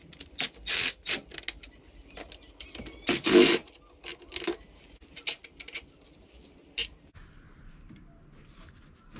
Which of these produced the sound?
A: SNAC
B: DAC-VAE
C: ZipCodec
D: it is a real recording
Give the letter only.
D